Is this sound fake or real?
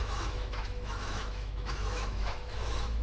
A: fake